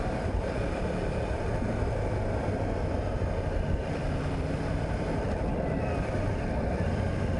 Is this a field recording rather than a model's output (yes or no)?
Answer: no